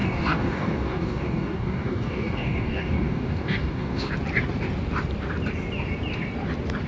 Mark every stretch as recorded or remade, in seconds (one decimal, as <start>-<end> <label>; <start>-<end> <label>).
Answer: 0.0-4.1 remade; 4.1-6.9 recorded